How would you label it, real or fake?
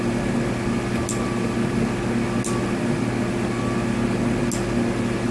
real